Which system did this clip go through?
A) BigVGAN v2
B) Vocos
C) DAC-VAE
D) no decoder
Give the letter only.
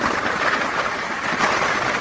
D